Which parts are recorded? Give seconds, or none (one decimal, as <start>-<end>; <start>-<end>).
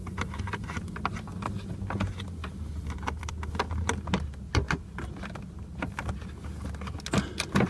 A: 0.0-2.4; 3.3-7.7